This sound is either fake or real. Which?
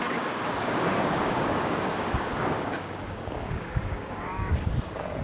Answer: fake